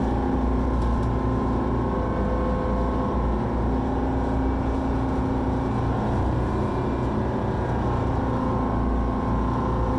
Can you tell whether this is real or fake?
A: real